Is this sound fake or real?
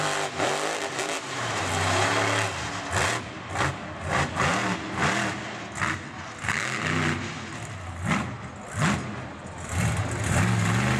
real